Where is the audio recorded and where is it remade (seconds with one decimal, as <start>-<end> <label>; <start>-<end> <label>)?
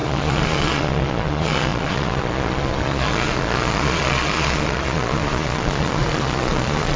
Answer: 0.0-7.0 remade